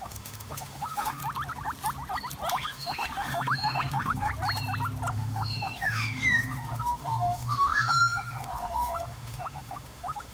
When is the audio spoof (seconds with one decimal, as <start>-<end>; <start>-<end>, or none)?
0.0-1.2; 2.5-4.3; 5.1-10.3